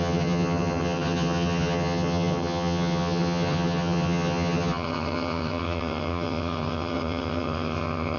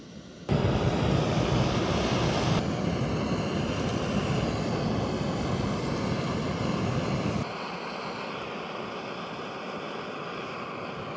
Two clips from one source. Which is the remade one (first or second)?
first